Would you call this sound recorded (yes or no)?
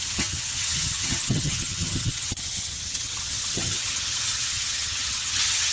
no